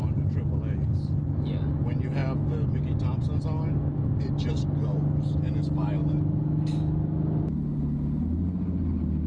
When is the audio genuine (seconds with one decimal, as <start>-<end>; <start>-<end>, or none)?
0.0-9.3